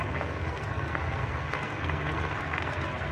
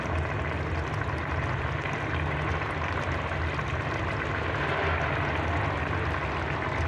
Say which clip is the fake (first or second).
first